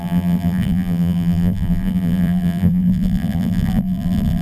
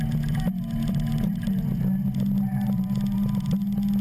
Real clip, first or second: second